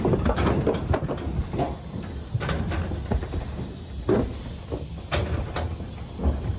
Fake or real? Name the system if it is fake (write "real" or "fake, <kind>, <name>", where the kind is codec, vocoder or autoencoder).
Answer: real